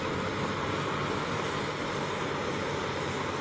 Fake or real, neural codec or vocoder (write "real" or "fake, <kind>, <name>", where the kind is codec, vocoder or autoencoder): real